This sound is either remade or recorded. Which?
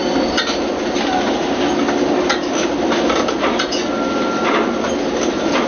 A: recorded